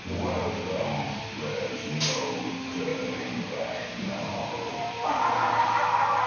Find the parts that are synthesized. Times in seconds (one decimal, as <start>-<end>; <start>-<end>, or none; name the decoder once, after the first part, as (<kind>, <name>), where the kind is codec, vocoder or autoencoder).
2.9-5.3 (vocoder, BigVGAN v2)